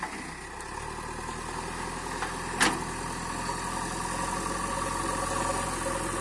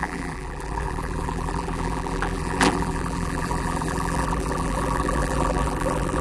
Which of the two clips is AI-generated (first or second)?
second